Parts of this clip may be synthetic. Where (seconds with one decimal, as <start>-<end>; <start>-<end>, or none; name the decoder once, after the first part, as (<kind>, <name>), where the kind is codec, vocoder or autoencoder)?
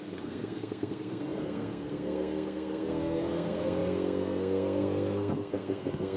0.0-6.2 (codec, SNAC)